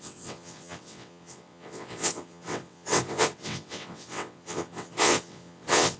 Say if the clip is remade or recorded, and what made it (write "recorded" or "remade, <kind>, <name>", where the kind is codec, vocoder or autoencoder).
remade, vocoder, WaveNeXt